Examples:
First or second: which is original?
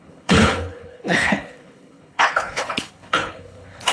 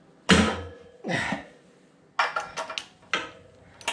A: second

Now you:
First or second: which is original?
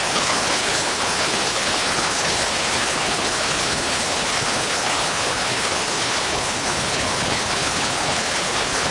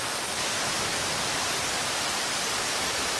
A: second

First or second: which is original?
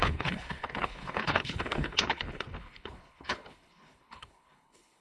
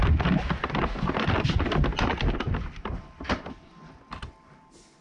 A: second